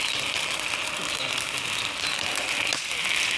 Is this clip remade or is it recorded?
recorded